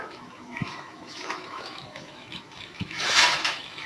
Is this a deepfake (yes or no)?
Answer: yes